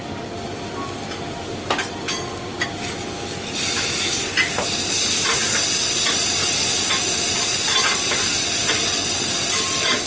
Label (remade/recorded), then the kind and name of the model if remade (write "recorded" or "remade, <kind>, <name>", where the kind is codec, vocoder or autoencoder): recorded